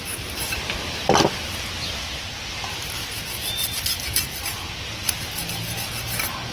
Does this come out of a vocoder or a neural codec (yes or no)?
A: no